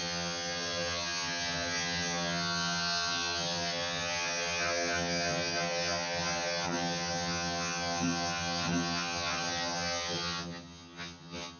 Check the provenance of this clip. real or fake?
fake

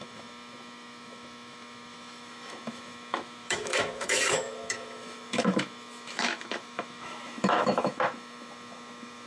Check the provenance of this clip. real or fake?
fake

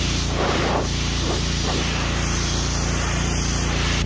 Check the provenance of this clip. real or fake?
fake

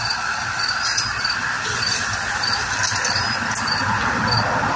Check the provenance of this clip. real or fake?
real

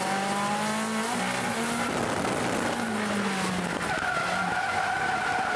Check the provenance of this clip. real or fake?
real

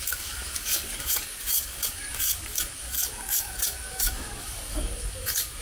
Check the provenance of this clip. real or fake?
fake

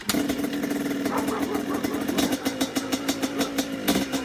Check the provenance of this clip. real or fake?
real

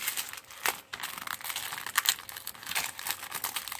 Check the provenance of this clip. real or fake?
real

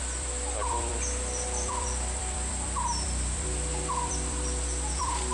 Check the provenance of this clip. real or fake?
fake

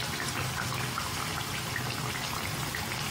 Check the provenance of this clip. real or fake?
real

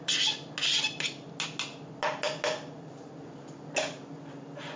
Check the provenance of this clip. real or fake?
real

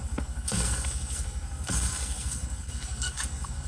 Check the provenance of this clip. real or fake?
fake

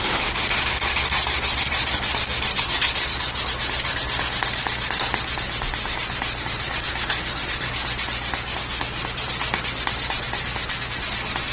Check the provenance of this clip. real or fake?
real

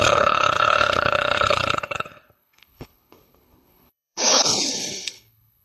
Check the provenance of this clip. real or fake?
fake